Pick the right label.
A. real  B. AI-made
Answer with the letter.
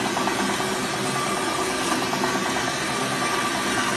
A